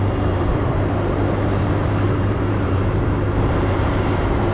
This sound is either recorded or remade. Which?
remade